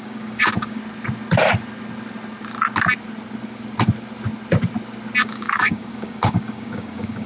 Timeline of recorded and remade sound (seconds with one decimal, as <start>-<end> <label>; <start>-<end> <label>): 0.0-0.8 remade; 0.8-5.2 recorded; 5.2-7.3 remade